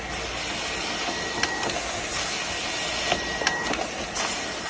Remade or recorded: recorded